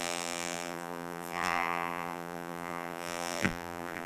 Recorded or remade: remade